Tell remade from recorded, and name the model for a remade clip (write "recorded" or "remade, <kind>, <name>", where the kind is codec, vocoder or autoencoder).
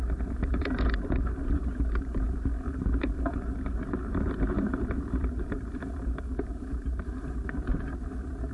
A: remade, vocoder, BigVGAN v2